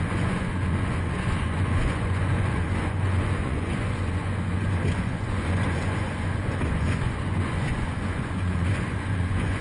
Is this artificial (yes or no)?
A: yes